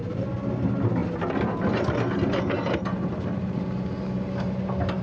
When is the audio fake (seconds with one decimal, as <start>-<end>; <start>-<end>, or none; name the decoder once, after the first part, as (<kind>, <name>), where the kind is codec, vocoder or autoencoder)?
none